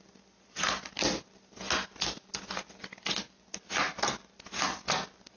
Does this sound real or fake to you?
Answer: real